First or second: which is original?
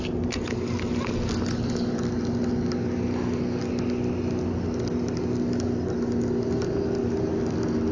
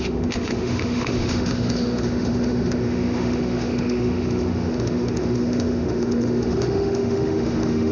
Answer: first